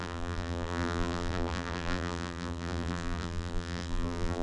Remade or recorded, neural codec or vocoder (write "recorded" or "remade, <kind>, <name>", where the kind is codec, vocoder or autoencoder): remade, vocoder, BigVGAN v2